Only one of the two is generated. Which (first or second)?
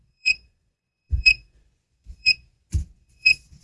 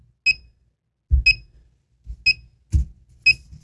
first